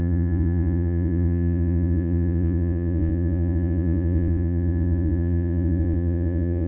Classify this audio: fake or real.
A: fake